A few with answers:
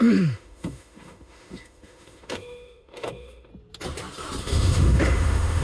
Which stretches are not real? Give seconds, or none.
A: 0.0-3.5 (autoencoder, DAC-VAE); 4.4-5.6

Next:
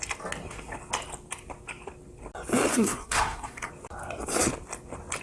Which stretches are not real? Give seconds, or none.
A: 2.7-3.7 (codec, SNAC)

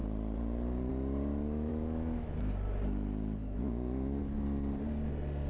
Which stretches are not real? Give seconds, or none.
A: 1.7-2.5 (autoencoder, DAC-VAE); 3.4-4.2

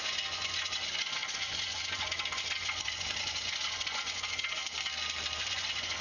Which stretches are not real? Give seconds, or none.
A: 0.0-4.6 (vocoder, Vocos); 5.4-6.0

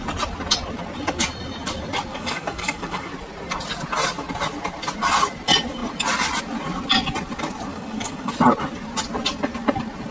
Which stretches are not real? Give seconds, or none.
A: 2.1-3.1 (codec, DAC); 7.7-8.3

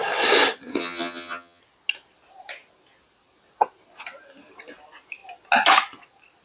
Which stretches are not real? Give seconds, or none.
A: 0.8-1.6 (vocoder, HiFi-GAN)

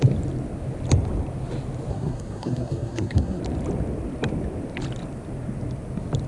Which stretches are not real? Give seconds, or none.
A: 1.9-3.4 (codec, SNAC)